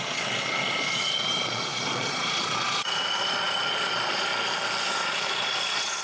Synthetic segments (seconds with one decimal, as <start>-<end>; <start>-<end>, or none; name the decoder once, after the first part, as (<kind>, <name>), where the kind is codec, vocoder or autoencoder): 0.0-4.3 (vocoder, Vocos); 4.8-6.0